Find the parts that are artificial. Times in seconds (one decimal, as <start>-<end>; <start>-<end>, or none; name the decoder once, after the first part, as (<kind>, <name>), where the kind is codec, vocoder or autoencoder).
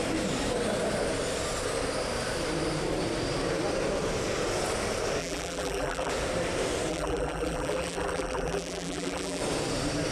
5.2-6.1 (vocoder, BigVGAN v2); 6.9-9.4